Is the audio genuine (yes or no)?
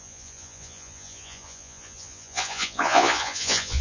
no